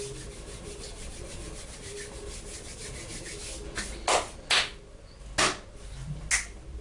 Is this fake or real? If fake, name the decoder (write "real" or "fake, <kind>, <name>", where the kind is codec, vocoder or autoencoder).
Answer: real